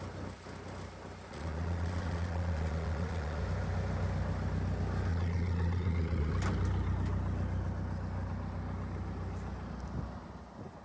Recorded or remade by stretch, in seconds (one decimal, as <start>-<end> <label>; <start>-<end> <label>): 0.0-1.3 recorded; 1.3-3.4 remade; 3.4-5.1 recorded; 5.1-6.3 remade; 6.3-10.8 recorded